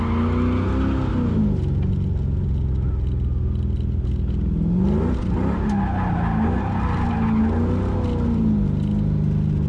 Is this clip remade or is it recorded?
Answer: recorded